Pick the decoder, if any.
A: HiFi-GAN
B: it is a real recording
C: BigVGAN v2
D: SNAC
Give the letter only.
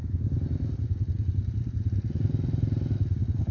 B